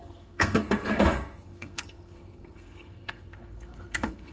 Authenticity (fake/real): fake